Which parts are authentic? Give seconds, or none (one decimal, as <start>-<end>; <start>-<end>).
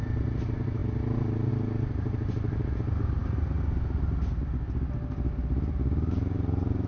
0.0-6.9